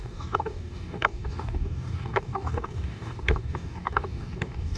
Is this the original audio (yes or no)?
no